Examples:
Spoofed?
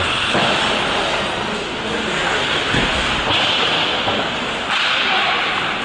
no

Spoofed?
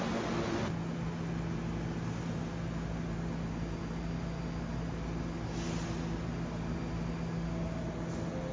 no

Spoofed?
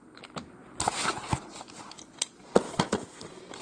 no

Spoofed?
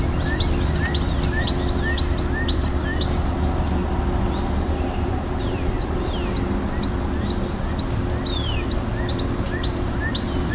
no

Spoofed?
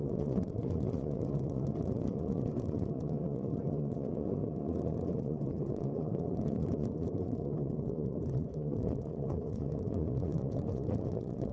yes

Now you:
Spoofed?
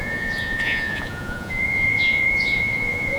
yes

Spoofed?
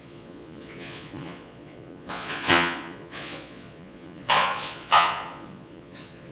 yes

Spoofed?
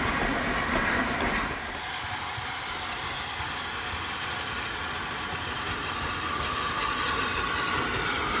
no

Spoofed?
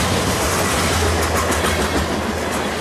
no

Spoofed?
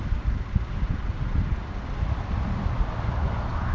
no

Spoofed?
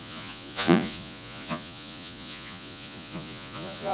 yes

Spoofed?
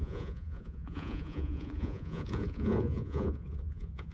yes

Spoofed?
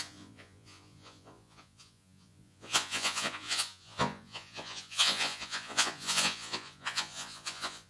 yes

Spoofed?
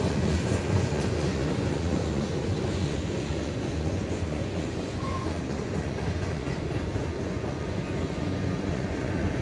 yes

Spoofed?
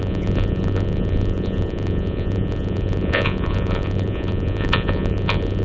yes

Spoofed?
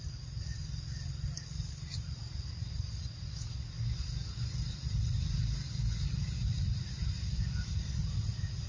no